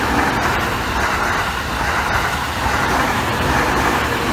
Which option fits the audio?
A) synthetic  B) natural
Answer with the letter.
B